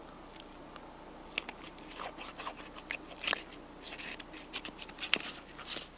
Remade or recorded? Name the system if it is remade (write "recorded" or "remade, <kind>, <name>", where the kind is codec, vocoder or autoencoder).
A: recorded